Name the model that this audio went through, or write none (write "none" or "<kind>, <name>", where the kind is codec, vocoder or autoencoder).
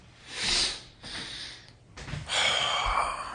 none